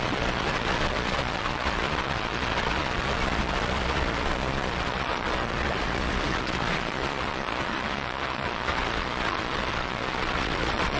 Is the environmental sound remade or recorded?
remade